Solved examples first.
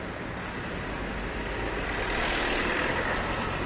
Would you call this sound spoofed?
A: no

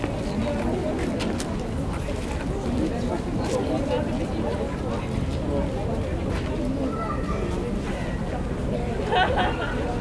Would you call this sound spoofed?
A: no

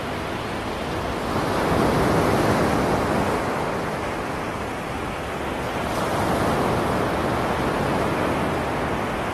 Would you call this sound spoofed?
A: no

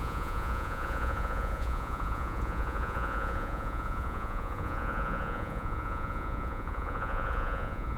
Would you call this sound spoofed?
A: yes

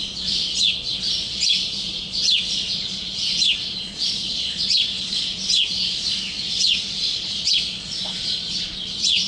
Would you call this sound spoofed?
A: yes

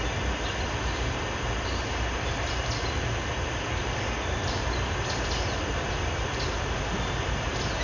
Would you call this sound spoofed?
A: no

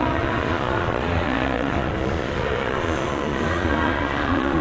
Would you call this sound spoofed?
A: yes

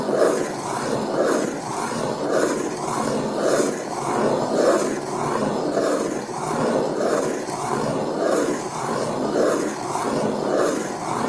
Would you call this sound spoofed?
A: no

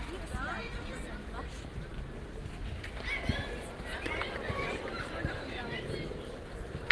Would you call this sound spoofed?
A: no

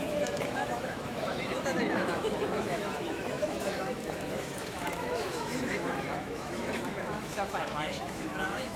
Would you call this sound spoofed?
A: yes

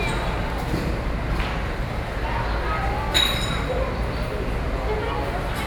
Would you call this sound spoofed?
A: no